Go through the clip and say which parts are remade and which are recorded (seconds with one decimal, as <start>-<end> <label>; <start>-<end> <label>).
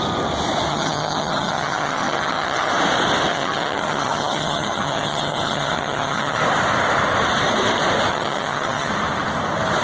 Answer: 0.0-0.7 recorded; 0.7-2.7 remade; 2.7-3.3 recorded; 3.3-6.4 remade; 6.4-8.1 recorded; 8.1-8.9 remade; 8.9-9.8 recorded